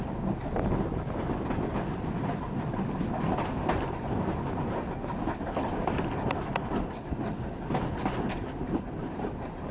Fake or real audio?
real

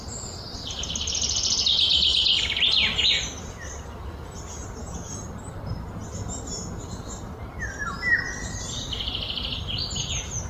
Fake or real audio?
real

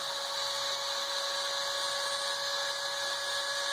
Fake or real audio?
real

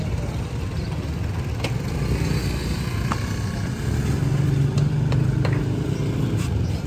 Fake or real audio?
real